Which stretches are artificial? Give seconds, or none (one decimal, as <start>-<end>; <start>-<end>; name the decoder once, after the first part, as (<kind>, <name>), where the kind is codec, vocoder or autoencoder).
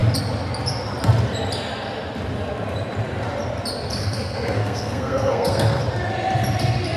4.0-5.8 (codec, SNAC)